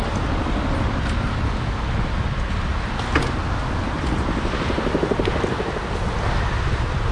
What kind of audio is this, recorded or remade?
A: recorded